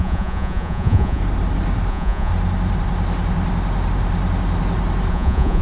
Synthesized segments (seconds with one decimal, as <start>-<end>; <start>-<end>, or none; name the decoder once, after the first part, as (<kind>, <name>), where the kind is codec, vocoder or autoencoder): 0.0-1.2 (vocoder, Vocos); 1.9-2.3; 5.1-5.6